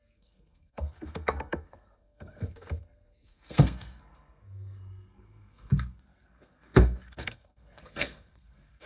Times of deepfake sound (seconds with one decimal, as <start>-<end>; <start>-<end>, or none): 0.0-8.9